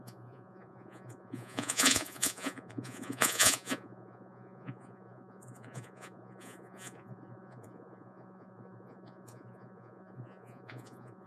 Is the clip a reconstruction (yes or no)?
yes